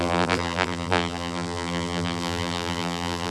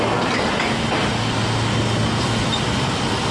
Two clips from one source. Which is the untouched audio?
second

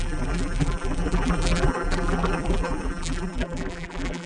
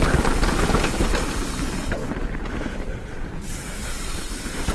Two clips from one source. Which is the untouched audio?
second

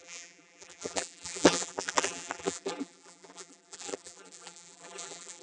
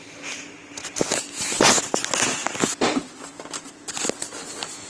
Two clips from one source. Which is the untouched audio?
second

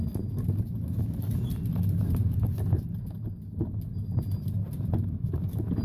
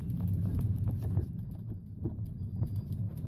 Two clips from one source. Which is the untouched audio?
first